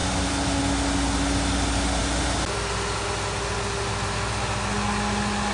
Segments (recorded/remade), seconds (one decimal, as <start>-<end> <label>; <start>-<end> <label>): 0.0-5.5 recorded